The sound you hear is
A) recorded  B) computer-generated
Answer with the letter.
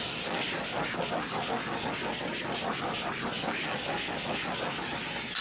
A